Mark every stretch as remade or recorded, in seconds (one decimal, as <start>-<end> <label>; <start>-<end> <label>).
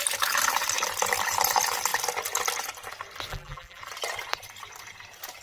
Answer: 0.0-3.3 recorded; 3.3-3.8 remade; 3.8-5.4 recorded